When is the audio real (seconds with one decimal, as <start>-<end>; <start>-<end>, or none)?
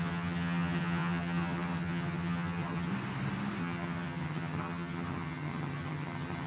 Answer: 2.9-3.6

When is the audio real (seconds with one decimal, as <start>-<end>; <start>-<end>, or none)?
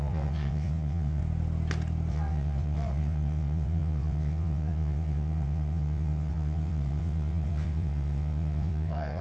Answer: 1.2-2.1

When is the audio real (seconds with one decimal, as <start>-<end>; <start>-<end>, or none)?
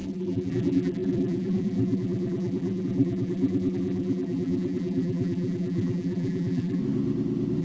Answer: 6.8-7.6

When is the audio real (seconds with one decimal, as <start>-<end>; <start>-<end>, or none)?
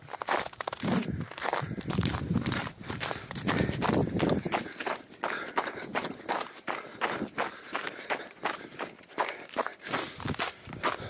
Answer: 0.0-11.1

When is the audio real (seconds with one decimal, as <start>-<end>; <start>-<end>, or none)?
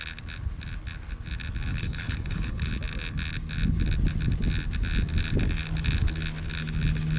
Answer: 0.0-1.7; 2.7-7.2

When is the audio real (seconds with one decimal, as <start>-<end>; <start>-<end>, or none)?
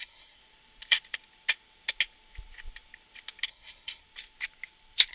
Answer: 0.4-3.5; 4.0-5.1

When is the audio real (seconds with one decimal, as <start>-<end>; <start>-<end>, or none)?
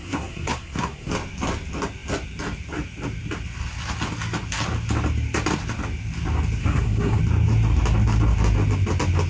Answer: 1.1-6.6; 7.2-9.3